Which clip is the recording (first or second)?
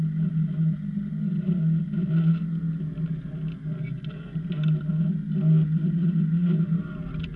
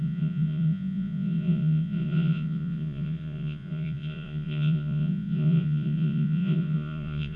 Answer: first